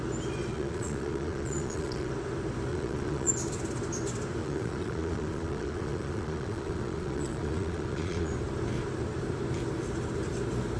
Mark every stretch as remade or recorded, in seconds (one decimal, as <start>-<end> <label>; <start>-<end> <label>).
0.0-0.5 recorded; 0.5-2.1 remade; 2.1-2.7 recorded; 2.7-3.3 remade; 3.3-4.4 recorded; 4.4-8.3 remade; 8.3-10.8 recorded